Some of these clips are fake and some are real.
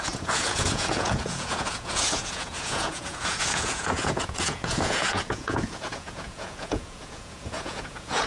fake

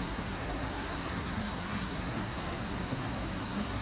fake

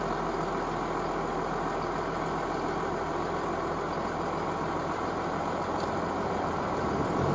real